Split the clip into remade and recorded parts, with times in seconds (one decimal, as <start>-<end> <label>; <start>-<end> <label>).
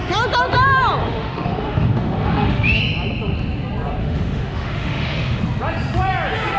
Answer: 0.0-1.0 recorded; 1.0-2.8 remade; 2.8-4.0 recorded; 4.0-5.4 remade; 5.4-6.6 recorded